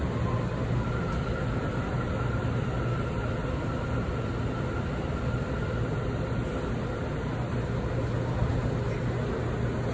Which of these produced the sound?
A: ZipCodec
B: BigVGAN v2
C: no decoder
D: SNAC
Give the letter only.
C